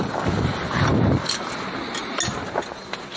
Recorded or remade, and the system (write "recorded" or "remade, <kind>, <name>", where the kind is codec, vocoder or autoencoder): recorded